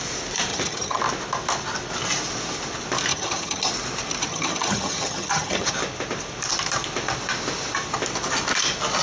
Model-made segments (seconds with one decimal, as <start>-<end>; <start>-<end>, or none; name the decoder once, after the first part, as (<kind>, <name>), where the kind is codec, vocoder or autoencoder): 0.5-1.0 (vocoder, HiFi-GAN); 3.1-3.7; 4.3-5.7